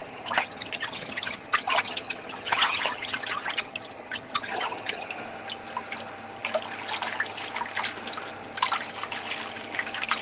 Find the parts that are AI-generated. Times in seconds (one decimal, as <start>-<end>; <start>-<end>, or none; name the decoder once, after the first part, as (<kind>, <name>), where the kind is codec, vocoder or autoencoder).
0.0-5.1 (vocoder, HiFi-GAN)